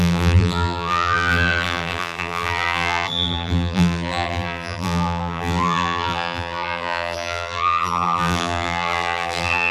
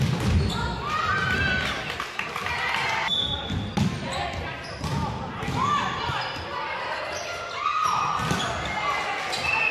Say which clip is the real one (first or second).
second